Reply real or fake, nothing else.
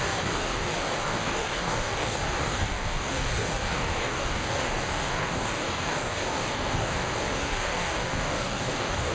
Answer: fake